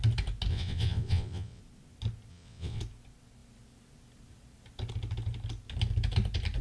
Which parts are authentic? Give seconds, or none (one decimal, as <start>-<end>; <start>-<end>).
0.0-0.5; 1.6-2.3; 2.8-6.6